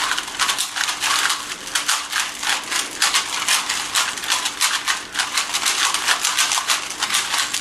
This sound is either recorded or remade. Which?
recorded